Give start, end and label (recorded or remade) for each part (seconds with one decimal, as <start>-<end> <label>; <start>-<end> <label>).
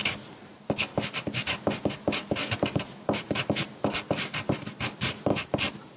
0.0-6.0 recorded